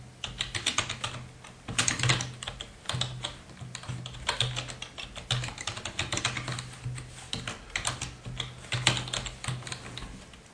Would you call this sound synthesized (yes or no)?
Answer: no